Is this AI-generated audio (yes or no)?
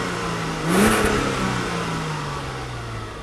no